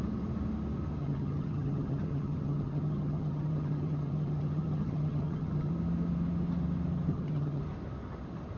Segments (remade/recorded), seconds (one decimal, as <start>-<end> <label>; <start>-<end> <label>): 0.0-1.0 recorded; 1.0-5.7 remade; 5.7-7.1 recorded; 7.1-7.6 remade; 7.6-8.6 recorded